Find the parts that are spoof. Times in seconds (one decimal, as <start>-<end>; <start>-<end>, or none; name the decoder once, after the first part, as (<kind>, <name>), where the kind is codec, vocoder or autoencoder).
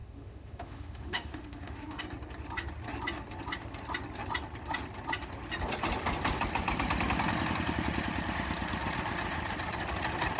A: 0.0-2.0 (autoencoder, DAC-VAE)